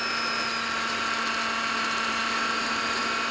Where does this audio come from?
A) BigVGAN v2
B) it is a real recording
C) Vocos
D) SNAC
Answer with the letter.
B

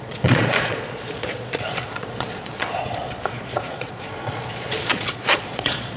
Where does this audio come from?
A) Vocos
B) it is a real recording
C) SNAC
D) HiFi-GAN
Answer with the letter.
A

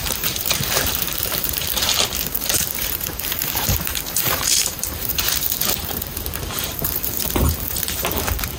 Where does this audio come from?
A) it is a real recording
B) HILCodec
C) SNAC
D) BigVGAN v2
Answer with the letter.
D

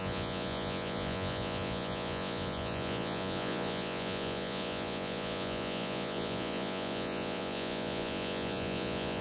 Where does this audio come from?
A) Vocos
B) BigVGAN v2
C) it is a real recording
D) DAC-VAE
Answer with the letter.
A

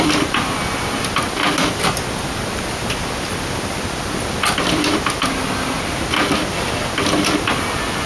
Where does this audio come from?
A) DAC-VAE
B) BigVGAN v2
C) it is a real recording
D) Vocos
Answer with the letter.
C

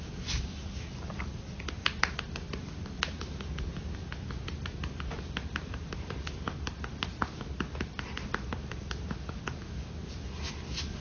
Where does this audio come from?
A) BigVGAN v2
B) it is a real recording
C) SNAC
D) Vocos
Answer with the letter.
B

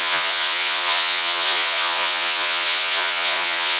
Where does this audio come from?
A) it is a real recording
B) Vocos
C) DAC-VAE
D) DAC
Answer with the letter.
B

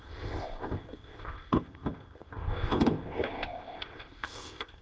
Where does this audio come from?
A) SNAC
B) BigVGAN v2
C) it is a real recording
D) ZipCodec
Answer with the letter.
D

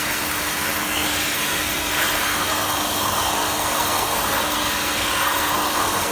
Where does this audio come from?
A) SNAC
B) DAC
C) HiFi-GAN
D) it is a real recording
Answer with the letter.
A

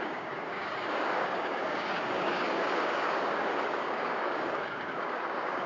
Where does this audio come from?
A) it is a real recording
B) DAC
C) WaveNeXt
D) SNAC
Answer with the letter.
B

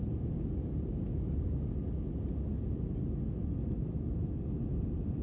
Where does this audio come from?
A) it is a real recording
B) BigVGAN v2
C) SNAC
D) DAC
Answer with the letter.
A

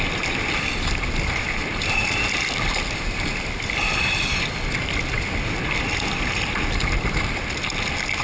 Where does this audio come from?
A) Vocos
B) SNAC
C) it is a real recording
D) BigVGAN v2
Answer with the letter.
C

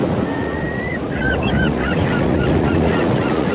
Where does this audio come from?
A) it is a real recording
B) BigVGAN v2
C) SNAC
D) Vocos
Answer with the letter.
D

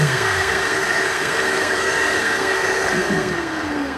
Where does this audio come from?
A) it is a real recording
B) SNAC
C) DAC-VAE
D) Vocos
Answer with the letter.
B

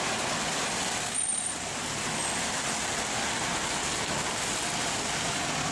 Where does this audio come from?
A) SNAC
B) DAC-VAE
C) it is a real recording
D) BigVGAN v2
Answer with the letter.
C